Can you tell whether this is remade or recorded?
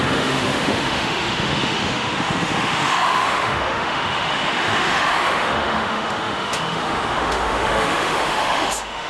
remade